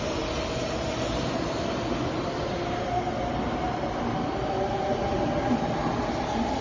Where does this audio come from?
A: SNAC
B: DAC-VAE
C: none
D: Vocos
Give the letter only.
C